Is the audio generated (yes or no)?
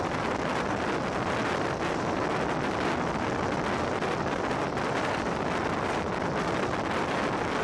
no